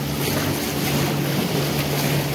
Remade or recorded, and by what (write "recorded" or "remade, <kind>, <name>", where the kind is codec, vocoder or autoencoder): recorded